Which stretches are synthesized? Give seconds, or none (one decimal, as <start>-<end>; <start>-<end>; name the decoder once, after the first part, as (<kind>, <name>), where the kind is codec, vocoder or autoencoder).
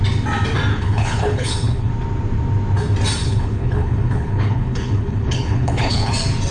0.7-1.9 (codec, HILCodec); 3.2-6.1